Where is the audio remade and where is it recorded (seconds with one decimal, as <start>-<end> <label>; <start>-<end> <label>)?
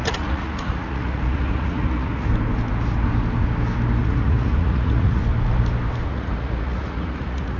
0.0-2.3 remade; 2.3-4.0 recorded; 4.0-5.2 remade; 5.2-6.1 recorded; 6.1-7.6 remade